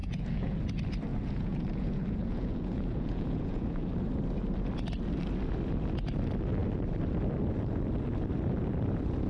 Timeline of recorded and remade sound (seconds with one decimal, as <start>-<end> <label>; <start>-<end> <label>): 0.0-0.6 remade; 0.6-1.1 recorded; 1.1-3.9 remade; 3.9-9.3 recorded